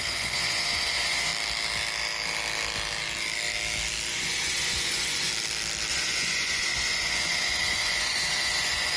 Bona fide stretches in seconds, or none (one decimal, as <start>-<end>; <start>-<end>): 1.3-4.1; 5.3-5.9

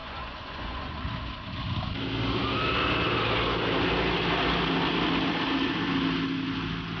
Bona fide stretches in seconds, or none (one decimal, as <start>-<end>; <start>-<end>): 1.1-7.0

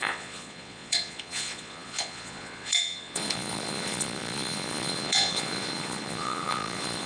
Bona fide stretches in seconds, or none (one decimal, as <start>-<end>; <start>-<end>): none